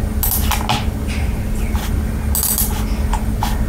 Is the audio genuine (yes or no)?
yes